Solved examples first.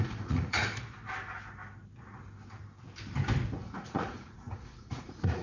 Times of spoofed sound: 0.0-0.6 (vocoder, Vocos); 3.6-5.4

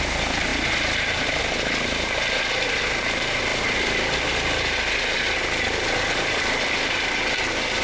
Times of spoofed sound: 0.5-1.4 (vocoder, BigVGAN v2); 3.5-4.7; 6.3-7.1